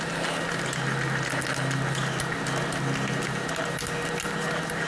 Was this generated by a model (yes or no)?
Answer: no